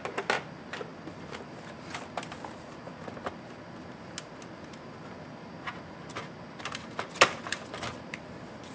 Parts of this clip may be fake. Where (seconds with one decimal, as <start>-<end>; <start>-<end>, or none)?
none